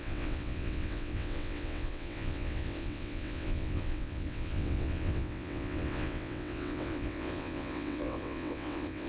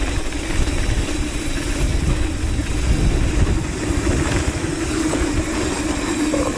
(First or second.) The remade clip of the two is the first